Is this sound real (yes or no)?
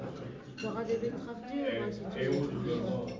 yes